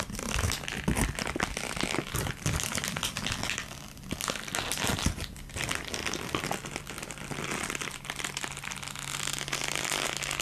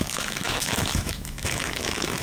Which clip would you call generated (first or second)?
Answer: second